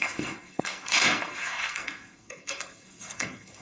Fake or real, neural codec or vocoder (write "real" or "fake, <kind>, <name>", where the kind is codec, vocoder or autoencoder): fake, codec, SNAC